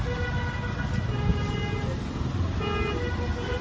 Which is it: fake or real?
real